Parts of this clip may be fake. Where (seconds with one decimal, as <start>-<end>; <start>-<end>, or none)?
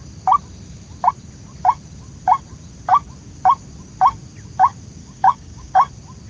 5.0-5.7